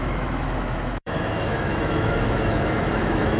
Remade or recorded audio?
remade